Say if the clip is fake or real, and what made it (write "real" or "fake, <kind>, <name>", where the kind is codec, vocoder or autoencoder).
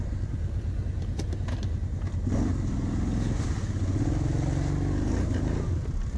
real